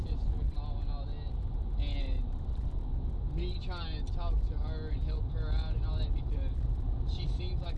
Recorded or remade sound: recorded